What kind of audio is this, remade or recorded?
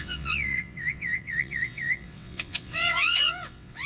remade